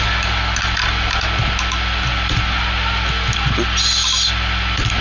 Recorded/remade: recorded